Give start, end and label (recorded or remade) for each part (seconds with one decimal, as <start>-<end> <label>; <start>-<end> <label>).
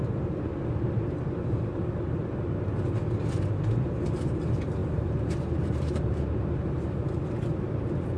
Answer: 0.0-0.5 remade; 0.5-1.2 recorded; 1.2-1.7 remade; 1.7-3.3 recorded; 3.3-8.2 remade